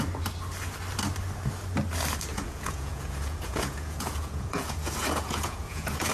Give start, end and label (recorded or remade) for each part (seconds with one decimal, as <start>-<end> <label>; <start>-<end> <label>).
0.0-2.3 recorded; 2.3-6.1 remade